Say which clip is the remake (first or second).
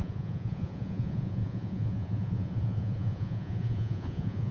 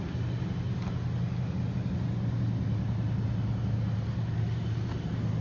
first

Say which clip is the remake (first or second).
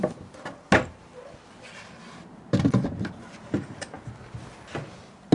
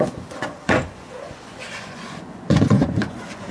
second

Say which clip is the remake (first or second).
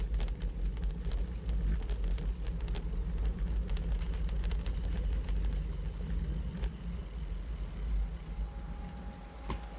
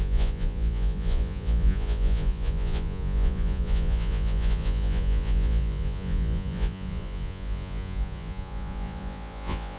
second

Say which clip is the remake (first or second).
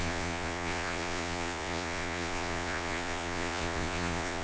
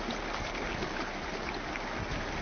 first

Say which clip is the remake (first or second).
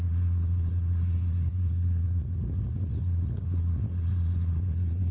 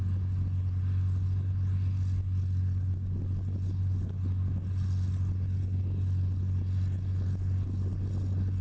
first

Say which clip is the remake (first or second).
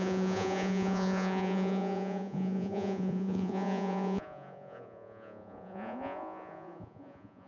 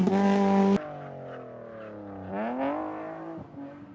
first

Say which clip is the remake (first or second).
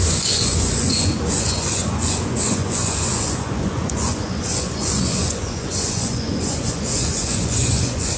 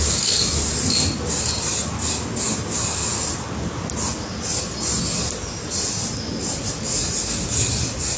first